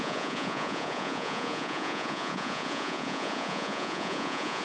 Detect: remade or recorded remade